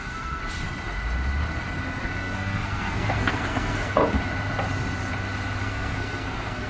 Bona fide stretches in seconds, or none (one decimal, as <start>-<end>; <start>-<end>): 0.4-2.0; 4.0-5.6